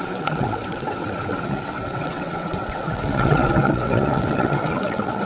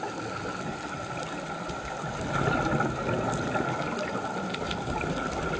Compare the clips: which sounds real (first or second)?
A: second